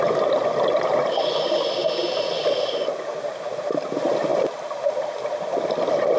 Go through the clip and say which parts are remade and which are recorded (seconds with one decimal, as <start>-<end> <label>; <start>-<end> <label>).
0.0-6.2 recorded